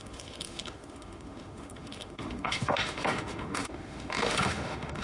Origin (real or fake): fake